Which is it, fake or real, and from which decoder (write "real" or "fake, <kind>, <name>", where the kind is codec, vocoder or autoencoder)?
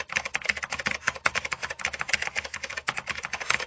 real